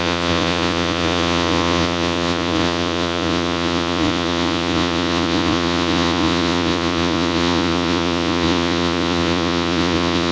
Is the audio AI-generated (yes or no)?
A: yes